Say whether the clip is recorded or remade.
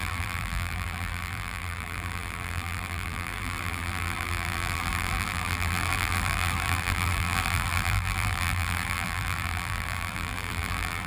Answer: remade